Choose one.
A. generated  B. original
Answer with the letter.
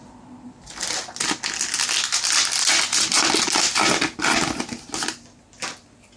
B